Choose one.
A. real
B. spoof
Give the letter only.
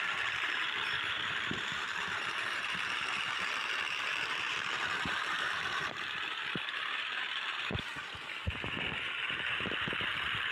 B